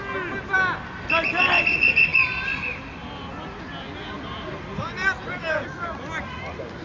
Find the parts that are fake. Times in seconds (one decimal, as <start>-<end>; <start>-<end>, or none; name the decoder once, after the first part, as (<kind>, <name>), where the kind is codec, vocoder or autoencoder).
none